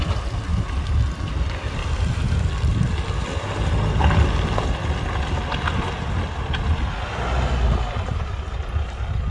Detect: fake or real real